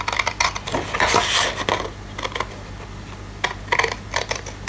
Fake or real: real